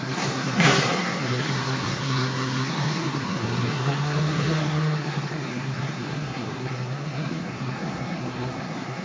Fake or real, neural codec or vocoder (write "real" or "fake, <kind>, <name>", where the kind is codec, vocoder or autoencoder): fake, codec, SNAC